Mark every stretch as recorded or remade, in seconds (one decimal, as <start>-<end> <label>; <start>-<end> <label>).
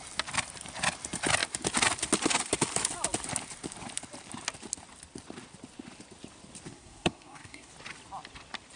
0.0-6.7 recorded; 6.7-7.7 remade; 7.7-8.8 recorded